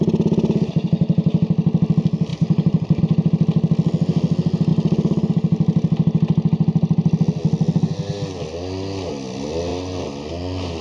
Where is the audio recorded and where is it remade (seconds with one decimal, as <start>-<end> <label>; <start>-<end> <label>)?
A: 0.0-2.3 recorded; 2.3-3.0 remade; 3.0-10.8 recorded